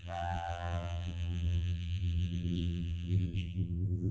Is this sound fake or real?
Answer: fake